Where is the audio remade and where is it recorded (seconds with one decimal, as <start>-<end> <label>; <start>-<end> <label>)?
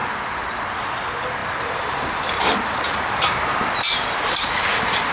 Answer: 0.0-0.6 remade; 0.6-1.4 recorded; 1.4-4.5 remade; 4.5-5.1 recorded